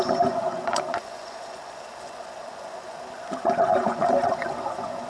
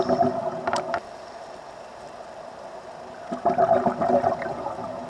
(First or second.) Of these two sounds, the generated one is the first